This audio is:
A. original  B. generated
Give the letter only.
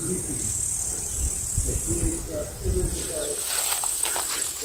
A